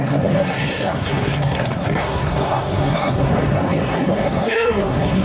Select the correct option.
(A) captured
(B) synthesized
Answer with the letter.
B